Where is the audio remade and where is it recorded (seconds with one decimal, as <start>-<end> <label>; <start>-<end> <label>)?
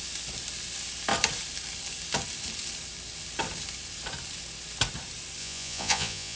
0.0-5.4 recorded; 5.4-6.4 remade